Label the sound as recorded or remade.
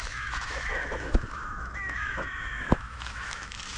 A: remade